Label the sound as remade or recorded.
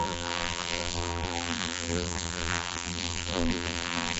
remade